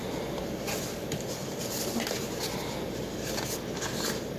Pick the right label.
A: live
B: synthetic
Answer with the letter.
A